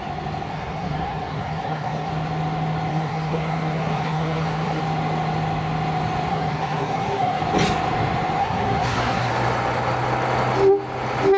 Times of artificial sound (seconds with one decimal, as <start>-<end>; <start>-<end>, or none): 0.5-2.1; 2.9-4.8; 6.3-7.4; 8.4-9.3